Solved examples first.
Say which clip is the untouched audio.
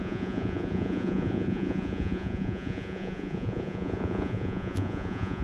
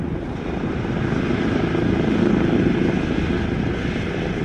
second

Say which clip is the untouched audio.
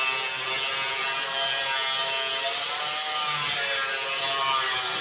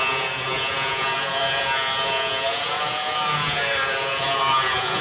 first